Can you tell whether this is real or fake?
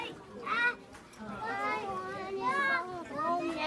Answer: real